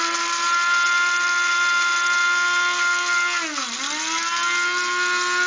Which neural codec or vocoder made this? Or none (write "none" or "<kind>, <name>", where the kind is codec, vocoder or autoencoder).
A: none